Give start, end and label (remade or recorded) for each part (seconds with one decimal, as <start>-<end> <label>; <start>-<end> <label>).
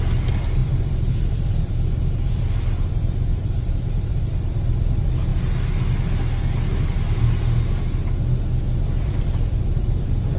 0.0-5.3 remade; 5.3-9.0 recorded; 9.0-10.4 remade